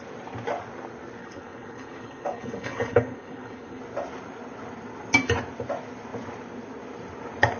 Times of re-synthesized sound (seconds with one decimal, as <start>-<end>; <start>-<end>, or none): 1.2-3.8

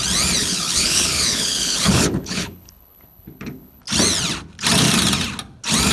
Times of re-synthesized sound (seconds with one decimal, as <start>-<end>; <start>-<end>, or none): 0.4-3.8

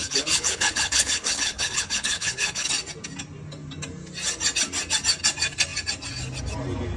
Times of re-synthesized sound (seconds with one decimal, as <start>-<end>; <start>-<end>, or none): 0.0-2.7

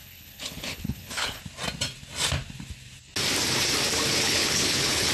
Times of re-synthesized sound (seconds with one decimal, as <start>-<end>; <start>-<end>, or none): 0.0-1.4; 4.1-5.1

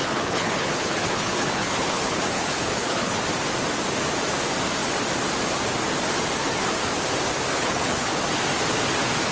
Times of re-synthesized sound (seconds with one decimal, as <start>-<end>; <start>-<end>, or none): 0.0-3.2; 7.5-8.1

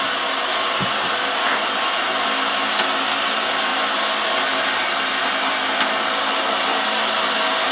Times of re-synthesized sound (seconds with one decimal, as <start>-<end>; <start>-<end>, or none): none

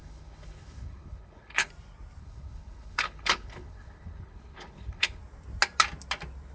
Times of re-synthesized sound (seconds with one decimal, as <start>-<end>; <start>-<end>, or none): 0.0-1.7; 2.2-5.2